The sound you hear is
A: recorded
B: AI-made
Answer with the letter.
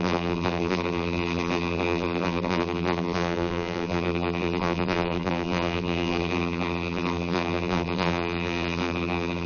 B